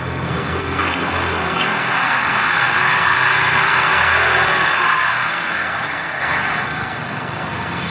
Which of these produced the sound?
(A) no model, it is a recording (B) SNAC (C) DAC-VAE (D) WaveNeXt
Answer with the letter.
B